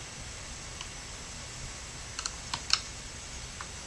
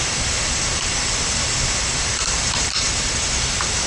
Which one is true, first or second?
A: first